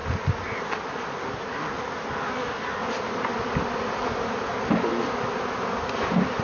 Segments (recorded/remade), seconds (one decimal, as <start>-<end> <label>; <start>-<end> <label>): 0.0-6.4 recorded